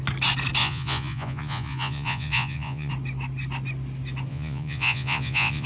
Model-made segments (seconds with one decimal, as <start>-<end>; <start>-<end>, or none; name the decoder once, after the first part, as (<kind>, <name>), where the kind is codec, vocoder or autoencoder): 0.6-2.9 (vocoder, Vocos); 4.3-5.7